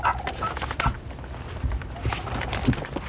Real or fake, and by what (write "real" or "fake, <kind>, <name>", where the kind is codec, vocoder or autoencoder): real